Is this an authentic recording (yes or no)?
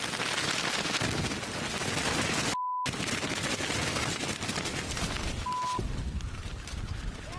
yes